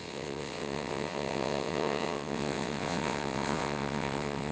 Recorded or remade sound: remade